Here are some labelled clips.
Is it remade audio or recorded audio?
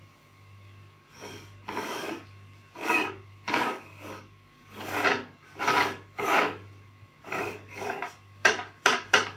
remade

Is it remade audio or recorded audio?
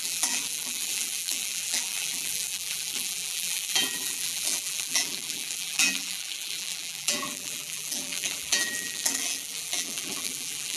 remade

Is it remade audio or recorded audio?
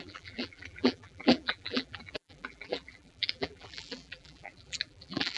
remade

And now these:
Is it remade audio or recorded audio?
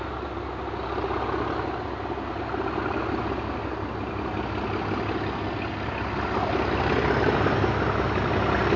recorded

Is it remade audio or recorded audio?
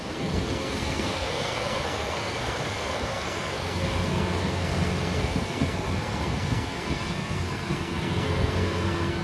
remade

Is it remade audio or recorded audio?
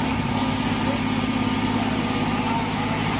recorded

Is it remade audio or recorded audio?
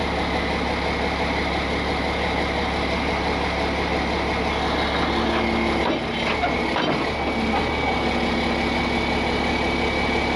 recorded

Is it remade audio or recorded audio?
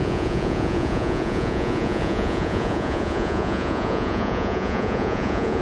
remade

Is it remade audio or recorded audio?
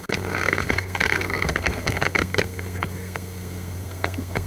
remade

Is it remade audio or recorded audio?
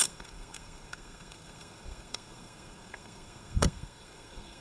remade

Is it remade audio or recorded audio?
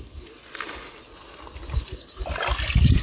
recorded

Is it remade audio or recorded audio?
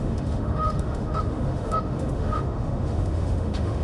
remade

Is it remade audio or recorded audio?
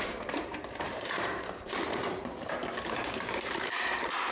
remade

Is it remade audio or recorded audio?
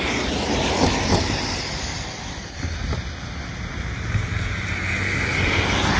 recorded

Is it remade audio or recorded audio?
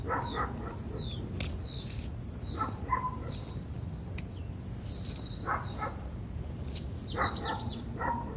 recorded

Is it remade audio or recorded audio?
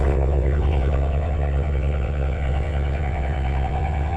remade